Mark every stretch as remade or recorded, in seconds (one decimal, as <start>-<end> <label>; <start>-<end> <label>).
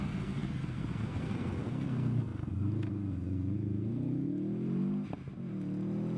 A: 0.0-4.3 remade; 4.3-6.2 recorded